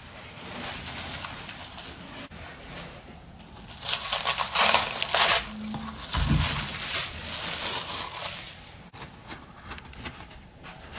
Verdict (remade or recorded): recorded